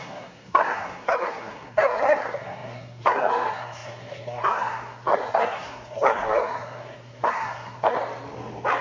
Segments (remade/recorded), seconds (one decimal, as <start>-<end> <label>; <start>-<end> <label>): 0.0-8.0 remade; 8.0-8.8 recorded